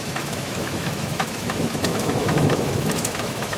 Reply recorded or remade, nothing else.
remade